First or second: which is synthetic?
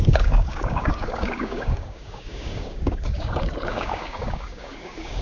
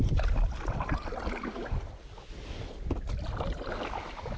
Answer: first